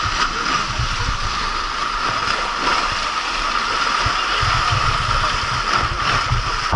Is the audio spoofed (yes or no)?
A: no